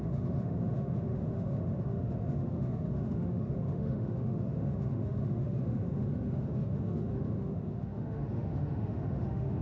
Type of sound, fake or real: fake